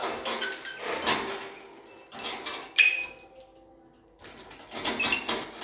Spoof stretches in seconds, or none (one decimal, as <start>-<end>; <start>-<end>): none